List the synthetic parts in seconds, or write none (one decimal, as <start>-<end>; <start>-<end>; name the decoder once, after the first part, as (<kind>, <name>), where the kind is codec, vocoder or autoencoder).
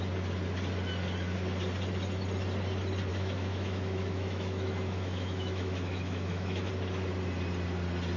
3.1-6.7 (autoencoder, DAC-VAE)